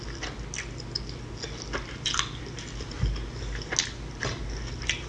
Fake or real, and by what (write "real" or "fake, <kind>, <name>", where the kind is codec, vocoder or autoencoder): real